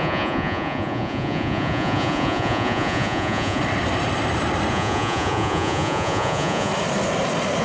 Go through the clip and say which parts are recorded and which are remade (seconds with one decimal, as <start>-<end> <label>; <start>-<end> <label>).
0.0-3.6 remade; 3.6-4.7 recorded; 4.7-6.7 remade; 6.7-7.6 recorded

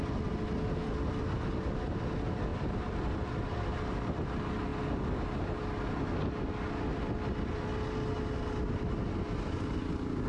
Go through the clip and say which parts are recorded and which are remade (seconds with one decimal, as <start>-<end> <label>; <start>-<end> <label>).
0.0-10.3 recorded

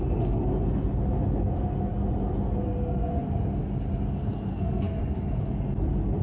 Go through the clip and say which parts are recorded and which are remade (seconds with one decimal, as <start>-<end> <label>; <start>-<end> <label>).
0.0-4.5 recorded; 4.5-5.0 remade; 5.0-6.2 recorded

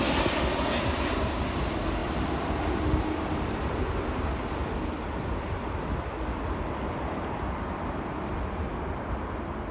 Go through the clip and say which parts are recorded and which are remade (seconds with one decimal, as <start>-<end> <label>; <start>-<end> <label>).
0.0-9.7 recorded